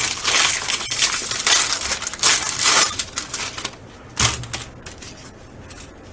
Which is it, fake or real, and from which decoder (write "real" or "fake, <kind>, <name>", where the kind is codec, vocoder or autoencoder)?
real